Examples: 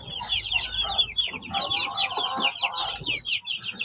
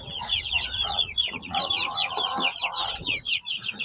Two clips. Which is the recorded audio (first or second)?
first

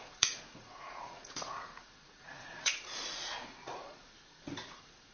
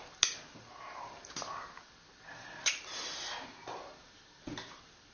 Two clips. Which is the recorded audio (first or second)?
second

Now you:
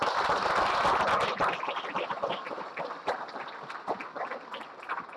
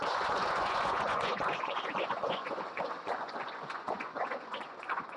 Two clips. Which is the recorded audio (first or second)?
first